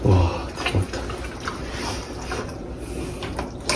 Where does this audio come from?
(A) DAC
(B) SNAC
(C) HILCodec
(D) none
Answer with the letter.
D